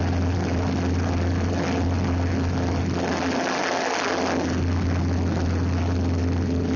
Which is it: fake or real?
real